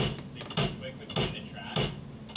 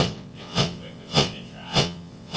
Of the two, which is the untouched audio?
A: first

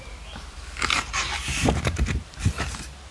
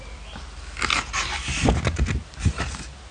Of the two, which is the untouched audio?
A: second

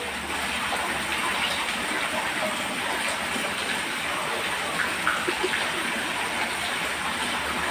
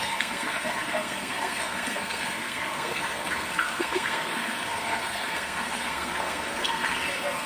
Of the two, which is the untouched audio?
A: first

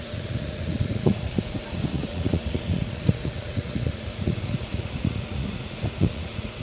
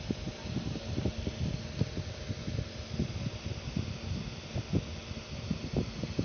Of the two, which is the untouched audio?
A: second